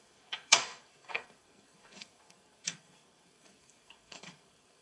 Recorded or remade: remade